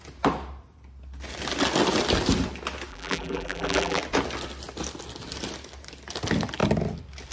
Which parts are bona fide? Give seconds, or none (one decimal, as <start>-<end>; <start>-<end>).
0.0-2.9; 4.0-7.3

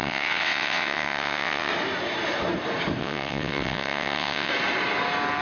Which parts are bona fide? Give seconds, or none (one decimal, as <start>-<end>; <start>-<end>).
1.7-3.0; 4.5-5.4

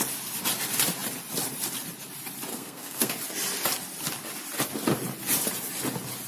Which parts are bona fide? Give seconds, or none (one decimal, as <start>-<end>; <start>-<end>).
0.0-2.5; 3.1-6.3

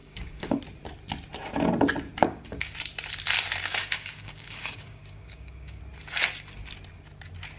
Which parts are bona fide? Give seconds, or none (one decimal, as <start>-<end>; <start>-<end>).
0.6-2.2; 2.7-3.8; 5.8-7.6

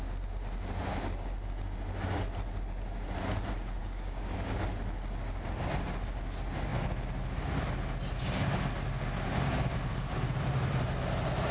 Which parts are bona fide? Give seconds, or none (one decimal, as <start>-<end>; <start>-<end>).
0.0-3.8; 4.7-11.5

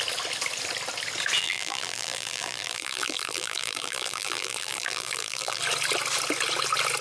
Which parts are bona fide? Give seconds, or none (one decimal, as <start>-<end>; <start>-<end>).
0.0-1.4; 5.6-7.0